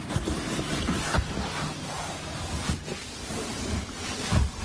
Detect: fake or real real